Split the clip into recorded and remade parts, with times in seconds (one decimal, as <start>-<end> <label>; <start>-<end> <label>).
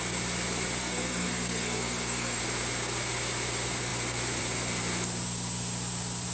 0.0-0.8 recorded; 0.8-2.4 remade; 2.4-6.3 recorded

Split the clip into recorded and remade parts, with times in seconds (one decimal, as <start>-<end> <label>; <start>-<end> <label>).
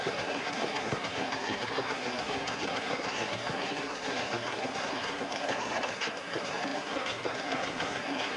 0.0-8.4 remade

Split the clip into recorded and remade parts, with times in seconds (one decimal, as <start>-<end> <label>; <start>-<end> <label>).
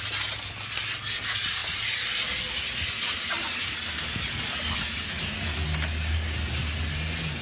0.0-7.4 recorded